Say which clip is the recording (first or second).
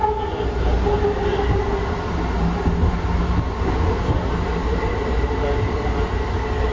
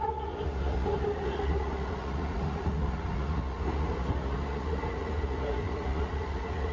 first